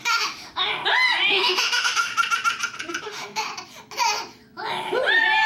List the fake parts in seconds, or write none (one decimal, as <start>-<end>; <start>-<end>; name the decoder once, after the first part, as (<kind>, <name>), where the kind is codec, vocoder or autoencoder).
0.0-0.7 (autoencoder, DAC-VAE); 1.3-2.1; 3.0-3.5